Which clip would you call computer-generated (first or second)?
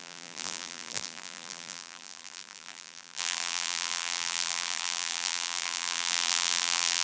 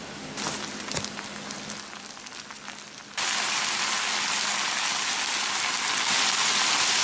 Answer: first